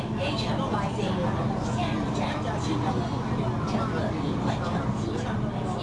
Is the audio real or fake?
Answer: real